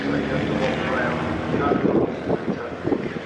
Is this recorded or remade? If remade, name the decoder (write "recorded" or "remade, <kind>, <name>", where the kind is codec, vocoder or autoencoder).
recorded